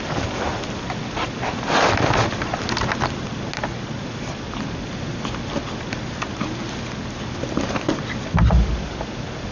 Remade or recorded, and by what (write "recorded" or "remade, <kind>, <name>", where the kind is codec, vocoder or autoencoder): recorded